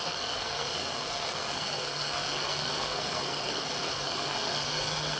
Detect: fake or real fake